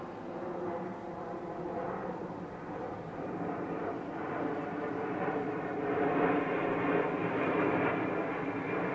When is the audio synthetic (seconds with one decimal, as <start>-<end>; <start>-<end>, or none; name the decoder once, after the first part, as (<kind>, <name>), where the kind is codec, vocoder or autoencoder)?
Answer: 2.0-6.2 (vocoder, BigVGAN v2); 7.2-7.9